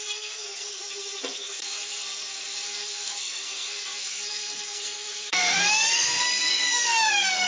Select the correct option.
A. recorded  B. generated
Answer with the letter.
B